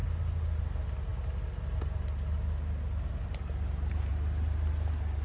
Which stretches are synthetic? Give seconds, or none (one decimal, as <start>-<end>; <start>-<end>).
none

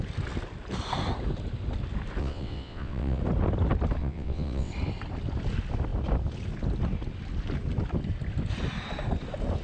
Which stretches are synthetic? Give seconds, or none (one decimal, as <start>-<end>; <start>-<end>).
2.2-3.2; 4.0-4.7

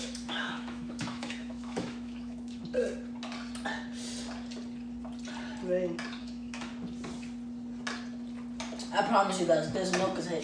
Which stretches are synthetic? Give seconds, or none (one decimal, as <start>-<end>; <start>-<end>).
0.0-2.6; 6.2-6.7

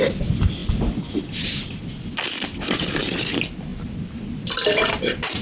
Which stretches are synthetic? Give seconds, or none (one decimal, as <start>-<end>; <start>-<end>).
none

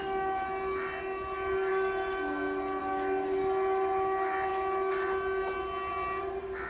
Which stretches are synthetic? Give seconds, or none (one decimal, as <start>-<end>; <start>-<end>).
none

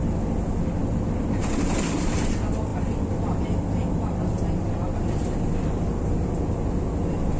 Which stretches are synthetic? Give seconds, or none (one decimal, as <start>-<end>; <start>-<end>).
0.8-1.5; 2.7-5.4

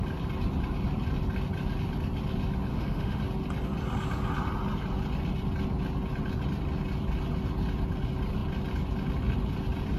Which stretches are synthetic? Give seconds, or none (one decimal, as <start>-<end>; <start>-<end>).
2.7-3.2